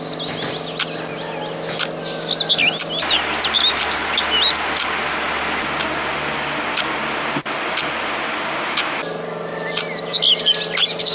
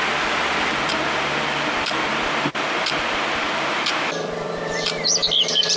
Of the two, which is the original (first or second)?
first